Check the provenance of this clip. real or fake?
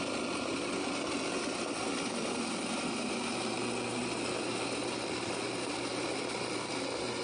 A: real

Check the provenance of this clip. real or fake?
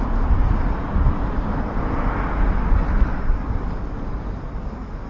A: real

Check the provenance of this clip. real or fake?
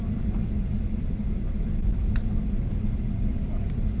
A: real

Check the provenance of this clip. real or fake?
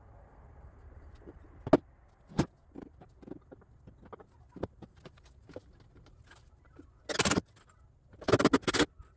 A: real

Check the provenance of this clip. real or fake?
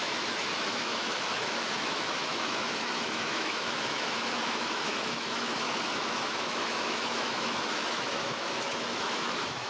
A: fake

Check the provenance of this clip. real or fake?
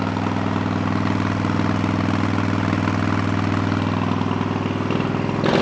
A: real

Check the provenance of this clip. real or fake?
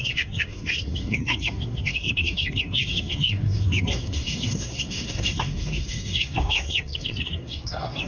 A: fake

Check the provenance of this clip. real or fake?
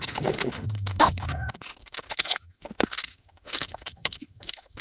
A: fake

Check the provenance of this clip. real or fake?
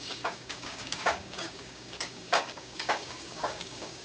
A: fake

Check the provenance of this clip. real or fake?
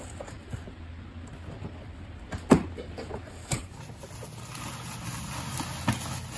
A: real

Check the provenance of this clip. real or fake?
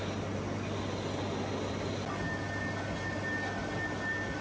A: real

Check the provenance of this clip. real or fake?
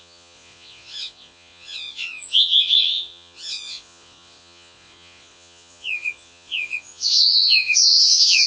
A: fake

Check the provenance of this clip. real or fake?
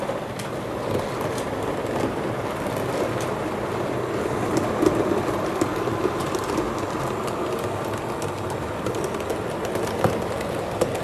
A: real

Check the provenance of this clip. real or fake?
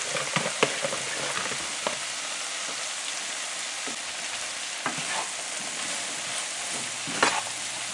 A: real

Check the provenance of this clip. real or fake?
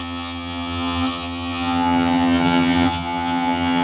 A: fake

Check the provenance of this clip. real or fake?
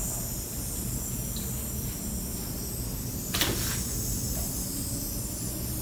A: real